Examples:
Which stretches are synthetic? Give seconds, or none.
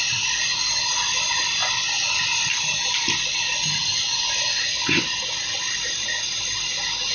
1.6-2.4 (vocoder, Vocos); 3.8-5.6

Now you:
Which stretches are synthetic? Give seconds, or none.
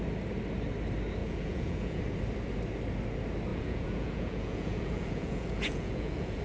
1.2-2.0 (vocoder, Vocos); 3.5-6.4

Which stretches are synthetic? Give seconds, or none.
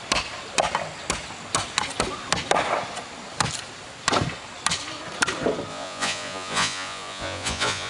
5.7-7.9 (vocoder, Vocos)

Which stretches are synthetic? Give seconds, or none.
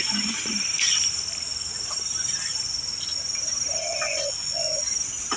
3.9-4.8 (vocoder, Vocos)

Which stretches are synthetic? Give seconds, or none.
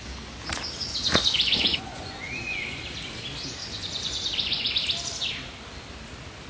0.9-2.8 (vocoder, Vocos); 3.6-4.7